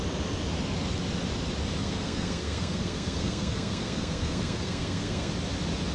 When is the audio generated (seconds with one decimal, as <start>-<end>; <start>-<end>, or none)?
1.8-5.3